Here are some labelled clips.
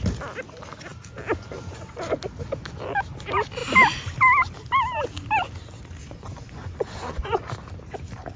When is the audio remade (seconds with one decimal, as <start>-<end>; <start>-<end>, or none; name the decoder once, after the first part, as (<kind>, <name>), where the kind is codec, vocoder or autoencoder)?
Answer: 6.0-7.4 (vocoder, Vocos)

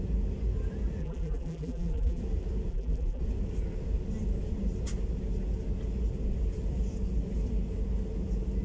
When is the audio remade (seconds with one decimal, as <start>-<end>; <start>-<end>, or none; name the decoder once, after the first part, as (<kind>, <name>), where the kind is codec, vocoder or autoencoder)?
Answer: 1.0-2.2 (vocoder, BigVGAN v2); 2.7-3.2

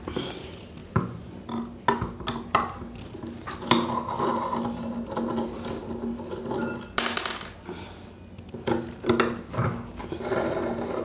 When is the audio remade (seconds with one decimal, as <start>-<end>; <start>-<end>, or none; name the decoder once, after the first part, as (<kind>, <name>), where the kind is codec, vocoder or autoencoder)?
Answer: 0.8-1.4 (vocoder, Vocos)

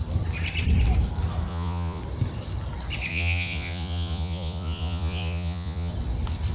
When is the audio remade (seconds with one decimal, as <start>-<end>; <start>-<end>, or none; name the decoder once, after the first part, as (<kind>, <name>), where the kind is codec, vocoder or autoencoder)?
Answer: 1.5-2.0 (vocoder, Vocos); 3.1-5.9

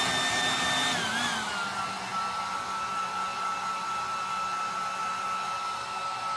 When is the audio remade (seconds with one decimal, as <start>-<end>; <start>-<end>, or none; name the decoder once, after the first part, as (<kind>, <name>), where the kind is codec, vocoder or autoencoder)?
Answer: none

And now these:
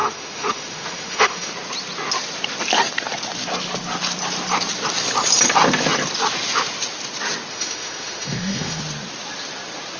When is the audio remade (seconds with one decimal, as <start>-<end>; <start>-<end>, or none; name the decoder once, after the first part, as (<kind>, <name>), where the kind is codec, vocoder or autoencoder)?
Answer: 0.0-1.5 (autoencoder, DAC-VAE); 7.5-8.8